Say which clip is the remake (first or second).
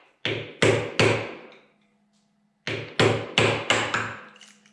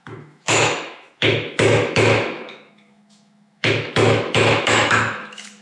second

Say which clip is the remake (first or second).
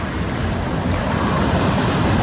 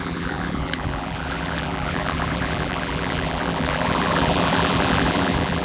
second